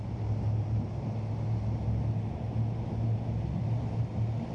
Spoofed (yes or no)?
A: no